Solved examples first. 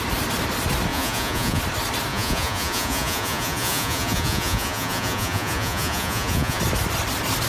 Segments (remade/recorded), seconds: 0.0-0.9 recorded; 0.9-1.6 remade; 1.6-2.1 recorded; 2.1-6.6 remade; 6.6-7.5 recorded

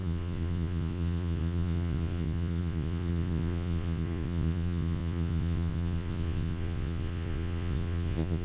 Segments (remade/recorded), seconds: 0.0-8.4 remade